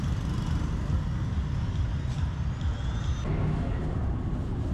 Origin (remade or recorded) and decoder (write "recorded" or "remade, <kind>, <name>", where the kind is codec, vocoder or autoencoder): recorded